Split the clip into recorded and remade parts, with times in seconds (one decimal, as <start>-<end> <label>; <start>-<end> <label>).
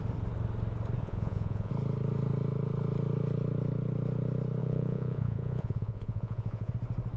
0.0-1.0 recorded; 1.0-1.7 remade; 1.7-4.6 recorded; 4.6-6.7 remade; 6.7-7.2 recorded